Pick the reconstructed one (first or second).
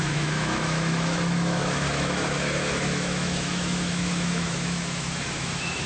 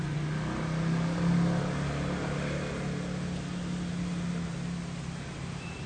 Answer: first